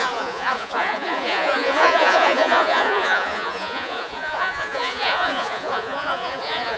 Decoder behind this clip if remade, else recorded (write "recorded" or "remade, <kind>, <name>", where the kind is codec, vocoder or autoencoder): remade, vocoder, Vocos